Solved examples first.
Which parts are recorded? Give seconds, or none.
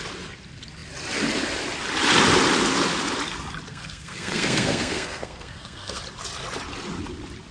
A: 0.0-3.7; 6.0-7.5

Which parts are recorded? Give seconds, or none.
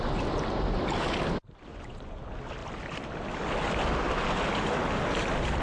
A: 0.0-1.7; 2.2-5.6